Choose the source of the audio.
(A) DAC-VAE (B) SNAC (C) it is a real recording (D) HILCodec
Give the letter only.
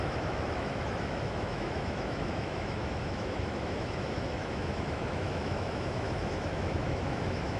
A